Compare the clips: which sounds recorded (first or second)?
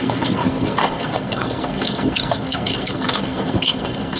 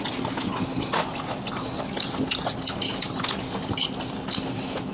second